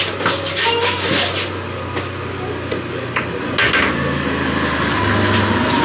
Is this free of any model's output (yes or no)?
yes